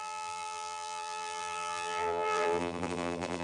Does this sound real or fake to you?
fake